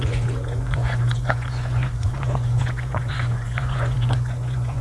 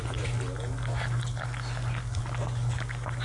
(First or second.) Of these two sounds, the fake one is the first